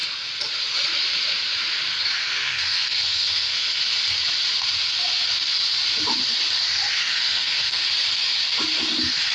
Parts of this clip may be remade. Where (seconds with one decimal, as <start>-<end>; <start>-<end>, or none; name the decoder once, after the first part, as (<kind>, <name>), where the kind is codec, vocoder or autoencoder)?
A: 2.2-3.8 (codec, SNAC); 7.0-7.8

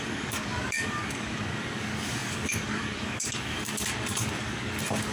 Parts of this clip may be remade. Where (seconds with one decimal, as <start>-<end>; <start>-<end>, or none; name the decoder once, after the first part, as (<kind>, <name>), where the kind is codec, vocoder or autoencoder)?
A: 0.0-5.1 (codec, DAC)

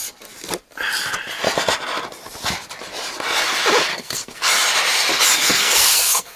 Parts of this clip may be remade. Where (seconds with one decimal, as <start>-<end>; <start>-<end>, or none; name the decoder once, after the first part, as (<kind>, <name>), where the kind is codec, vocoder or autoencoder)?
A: 3.9-4.5 (codec, SNAC); 5.4-6.4

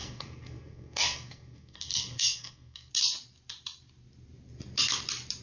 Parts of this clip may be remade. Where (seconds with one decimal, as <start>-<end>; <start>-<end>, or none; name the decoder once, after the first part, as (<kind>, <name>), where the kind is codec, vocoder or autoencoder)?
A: 0.0-2.9 (codec, SNAC)